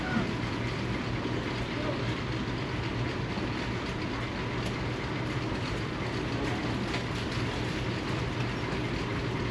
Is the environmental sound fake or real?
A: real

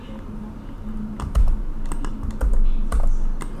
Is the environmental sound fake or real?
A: real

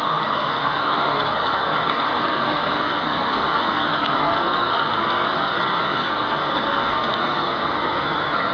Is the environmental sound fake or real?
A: fake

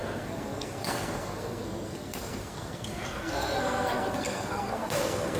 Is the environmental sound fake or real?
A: fake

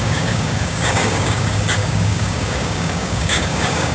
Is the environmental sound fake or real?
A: fake